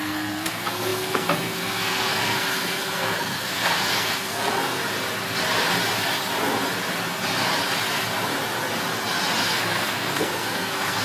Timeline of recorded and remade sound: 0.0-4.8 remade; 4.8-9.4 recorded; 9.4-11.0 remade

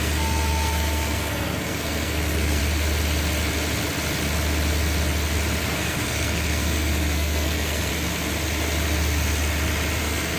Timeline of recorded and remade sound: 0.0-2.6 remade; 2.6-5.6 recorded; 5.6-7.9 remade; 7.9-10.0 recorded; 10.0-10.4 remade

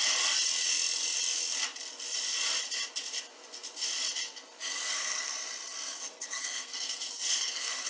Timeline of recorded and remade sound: 0.0-4.7 recorded; 4.7-5.3 remade; 5.3-6.0 recorded; 6.0-7.9 remade

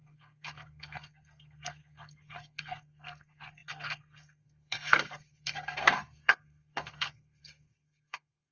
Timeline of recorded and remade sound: 0.0-8.5 remade

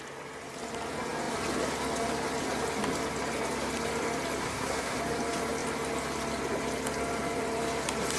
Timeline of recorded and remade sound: 0.0-4.4 recorded; 4.4-5.0 remade; 5.0-8.2 recorded

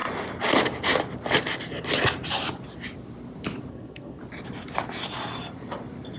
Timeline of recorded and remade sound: 0.0-3.7 recorded; 3.7-4.2 remade; 4.2-6.2 recorded